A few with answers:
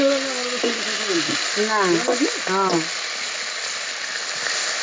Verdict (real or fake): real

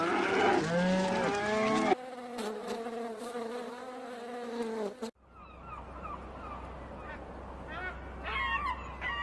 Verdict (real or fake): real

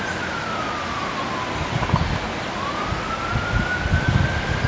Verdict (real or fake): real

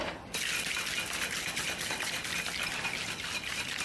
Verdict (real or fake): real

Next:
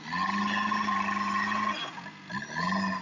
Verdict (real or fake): real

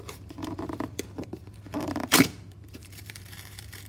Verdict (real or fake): fake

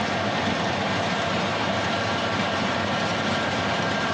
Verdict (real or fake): fake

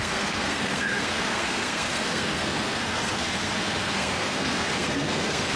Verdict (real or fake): fake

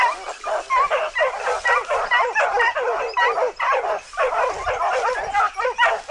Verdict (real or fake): real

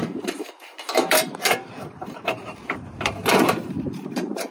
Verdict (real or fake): fake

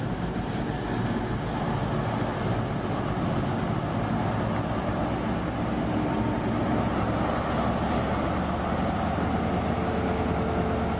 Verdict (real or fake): real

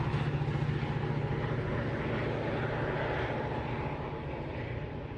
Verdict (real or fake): real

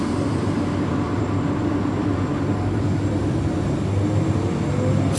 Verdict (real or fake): real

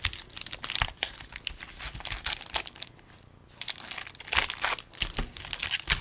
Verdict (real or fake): real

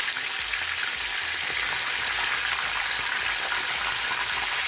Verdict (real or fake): real